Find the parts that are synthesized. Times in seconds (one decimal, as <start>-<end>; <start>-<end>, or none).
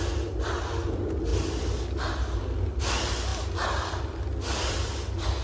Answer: none